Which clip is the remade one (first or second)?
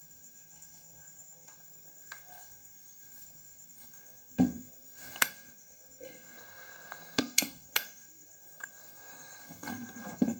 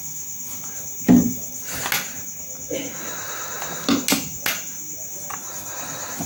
first